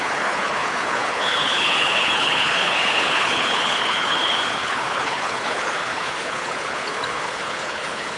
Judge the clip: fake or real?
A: fake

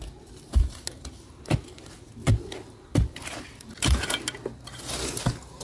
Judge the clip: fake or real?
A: real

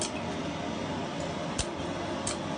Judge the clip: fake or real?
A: real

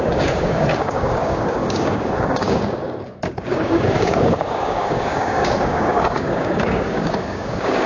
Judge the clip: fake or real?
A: fake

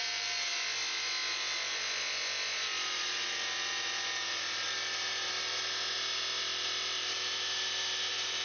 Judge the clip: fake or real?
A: real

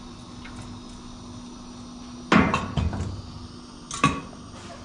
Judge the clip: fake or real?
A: real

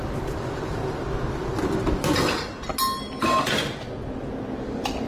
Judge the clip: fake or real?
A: real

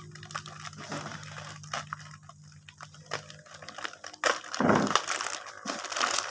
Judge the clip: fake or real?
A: real